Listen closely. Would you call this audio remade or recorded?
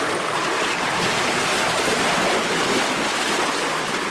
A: recorded